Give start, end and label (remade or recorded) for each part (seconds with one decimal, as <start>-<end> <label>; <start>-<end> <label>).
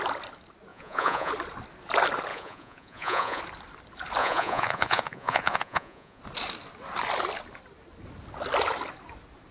0.0-0.7 recorded; 0.7-1.3 remade; 1.3-2.3 recorded; 2.3-3.4 remade; 3.4-4.2 recorded; 4.2-6.2 remade; 6.2-9.5 recorded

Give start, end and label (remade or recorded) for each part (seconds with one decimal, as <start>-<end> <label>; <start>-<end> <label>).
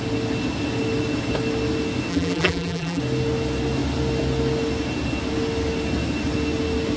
0.0-2.1 recorded; 2.1-3.0 remade; 3.0-7.0 recorded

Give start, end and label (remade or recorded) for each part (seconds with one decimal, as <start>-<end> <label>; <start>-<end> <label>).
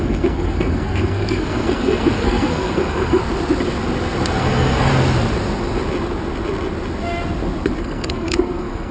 0.0-3.2 remade; 3.2-4.4 recorded; 4.4-4.9 remade; 4.9-7.8 recorded; 7.8-8.9 remade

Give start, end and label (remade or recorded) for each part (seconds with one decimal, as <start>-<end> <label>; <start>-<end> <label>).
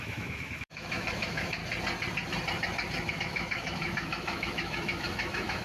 0.0-1.6 remade; 1.6-3.1 recorded; 3.1-5.6 remade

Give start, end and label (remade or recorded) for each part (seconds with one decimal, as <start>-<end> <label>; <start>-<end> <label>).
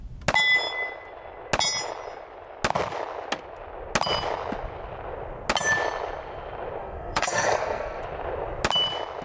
0.0-6.8 recorded; 6.8-8.0 remade; 8.0-9.2 recorded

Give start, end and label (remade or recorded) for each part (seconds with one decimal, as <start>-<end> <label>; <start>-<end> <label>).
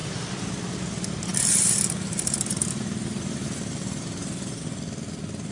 0.0-1.3 recorded; 1.3-4.6 remade; 4.6-5.5 recorded